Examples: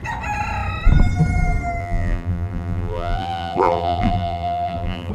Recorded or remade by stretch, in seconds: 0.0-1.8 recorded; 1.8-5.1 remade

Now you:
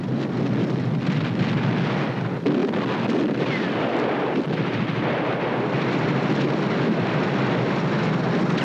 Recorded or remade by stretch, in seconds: 0.0-2.6 recorded; 2.6-7.7 remade; 7.7-8.6 recorded

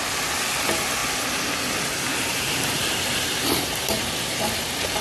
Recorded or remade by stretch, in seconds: 0.0-2.1 recorded; 2.1-4.6 remade; 4.6-5.0 recorded